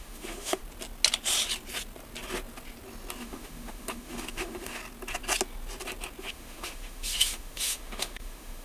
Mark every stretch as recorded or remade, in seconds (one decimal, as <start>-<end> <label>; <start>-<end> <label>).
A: 0.0-0.6 remade; 0.6-3.2 recorded; 3.2-4.8 remade; 4.8-6.2 recorded; 6.2-8.6 remade